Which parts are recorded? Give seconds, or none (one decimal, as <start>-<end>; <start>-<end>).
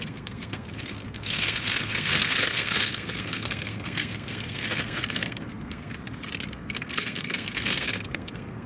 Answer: 5.9-6.5